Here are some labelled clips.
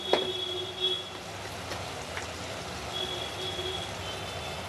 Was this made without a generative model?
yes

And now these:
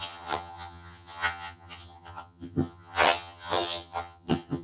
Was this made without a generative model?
no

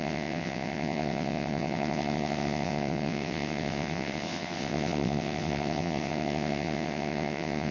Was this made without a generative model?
no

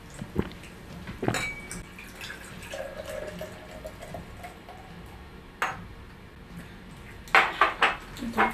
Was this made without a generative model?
yes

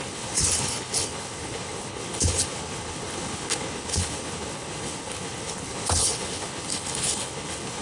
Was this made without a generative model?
no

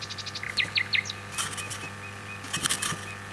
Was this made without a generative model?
yes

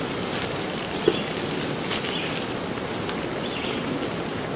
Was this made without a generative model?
yes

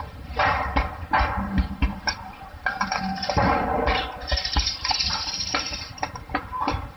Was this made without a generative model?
no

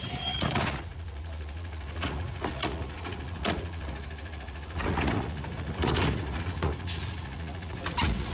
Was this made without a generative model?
no